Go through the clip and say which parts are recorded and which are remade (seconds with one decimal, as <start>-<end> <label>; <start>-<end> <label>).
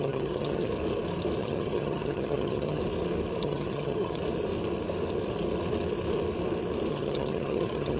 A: 0.0-0.7 remade; 0.7-1.4 recorded; 1.4-2.8 remade; 2.8-3.4 recorded; 3.4-4.2 remade; 4.2-6.9 recorded; 6.9-8.0 remade